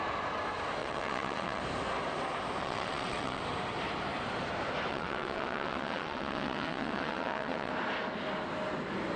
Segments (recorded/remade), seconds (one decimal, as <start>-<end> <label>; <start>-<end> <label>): 0.0-0.8 recorded; 0.8-1.6 remade; 1.6-2.6 recorded; 2.6-3.4 remade; 3.4-4.9 recorded; 4.9-7.7 remade; 7.7-9.2 recorded